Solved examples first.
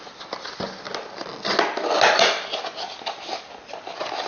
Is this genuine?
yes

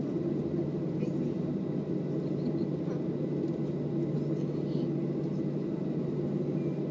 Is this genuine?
yes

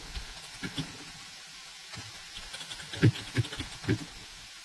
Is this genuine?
no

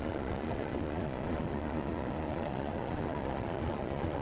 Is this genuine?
no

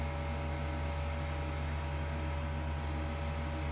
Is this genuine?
yes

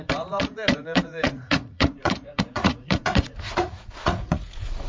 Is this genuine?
no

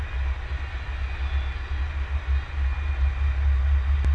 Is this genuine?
yes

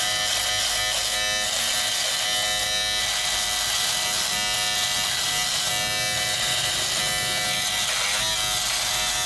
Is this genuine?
yes